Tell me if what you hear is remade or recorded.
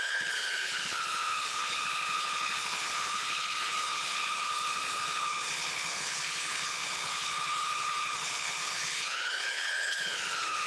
remade